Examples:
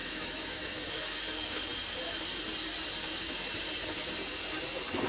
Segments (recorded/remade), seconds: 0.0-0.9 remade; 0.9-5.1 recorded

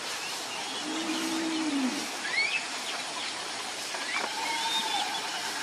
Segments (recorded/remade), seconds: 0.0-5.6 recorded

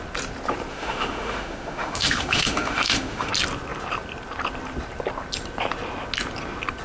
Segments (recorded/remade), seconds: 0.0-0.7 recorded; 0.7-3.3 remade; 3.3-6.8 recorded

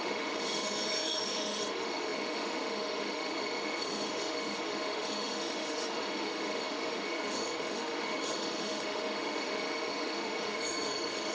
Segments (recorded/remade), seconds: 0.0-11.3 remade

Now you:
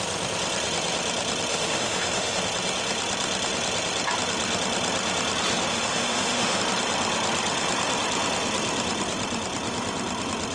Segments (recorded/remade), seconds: 0.0-1.5 recorded; 1.5-2.4 remade; 2.4-5.7 recorded; 5.7-6.6 remade; 6.6-10.5 recorded

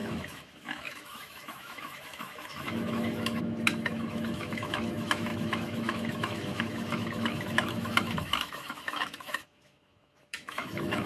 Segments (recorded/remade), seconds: 0.0-11.1 remade